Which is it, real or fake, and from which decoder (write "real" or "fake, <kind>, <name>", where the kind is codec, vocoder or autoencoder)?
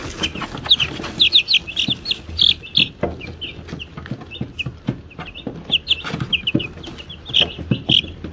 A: real